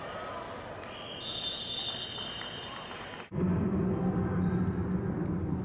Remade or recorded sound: recorded